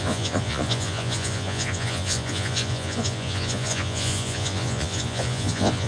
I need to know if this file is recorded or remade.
remade